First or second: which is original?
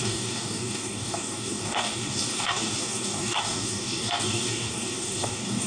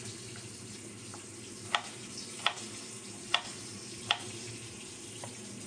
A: second